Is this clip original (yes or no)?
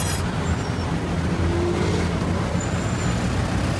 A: yes